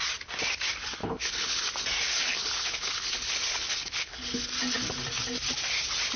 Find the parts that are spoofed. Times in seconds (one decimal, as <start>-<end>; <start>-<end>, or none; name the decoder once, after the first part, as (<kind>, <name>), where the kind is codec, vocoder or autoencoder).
1.0-1.6 (codec, HILCodec); 2.1-4.5